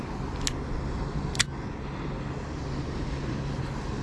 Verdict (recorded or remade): recorded